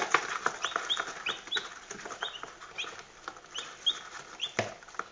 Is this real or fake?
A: real